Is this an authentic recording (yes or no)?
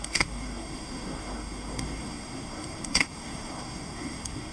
no